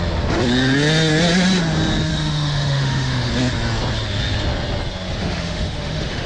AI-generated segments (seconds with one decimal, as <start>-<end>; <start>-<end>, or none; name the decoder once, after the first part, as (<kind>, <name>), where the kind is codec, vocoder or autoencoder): 2.1-3.3 (autoencoder, DAC-VAE); 5.2-6.3